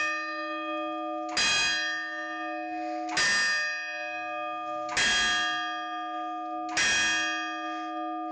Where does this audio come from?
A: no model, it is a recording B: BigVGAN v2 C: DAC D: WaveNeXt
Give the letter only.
A